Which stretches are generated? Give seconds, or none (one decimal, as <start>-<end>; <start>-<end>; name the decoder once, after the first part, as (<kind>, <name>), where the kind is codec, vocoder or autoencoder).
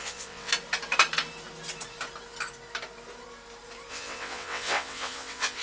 0.0-0.5 (vocoder, WaveNeXt); 3.9-5.6